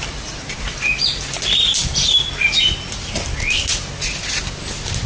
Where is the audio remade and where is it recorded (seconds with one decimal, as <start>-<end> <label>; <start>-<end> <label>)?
0.0-5.1 recorded